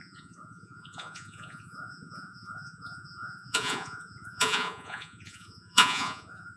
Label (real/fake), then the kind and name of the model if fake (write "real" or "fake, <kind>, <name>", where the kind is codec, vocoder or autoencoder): fake, vocoder, Vocos